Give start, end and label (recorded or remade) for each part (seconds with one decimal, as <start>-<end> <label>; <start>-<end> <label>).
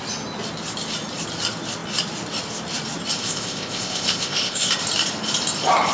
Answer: 0.0-3.2 recorded; 3.2-4.7 remade; 4.7-5.9 recorded